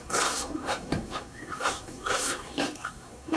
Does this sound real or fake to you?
fake